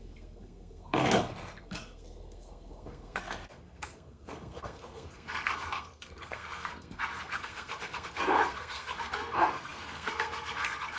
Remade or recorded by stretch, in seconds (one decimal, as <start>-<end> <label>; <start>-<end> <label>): 0.0-11.0 remade